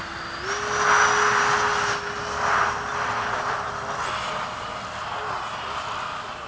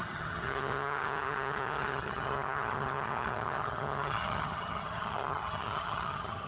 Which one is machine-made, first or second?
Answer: second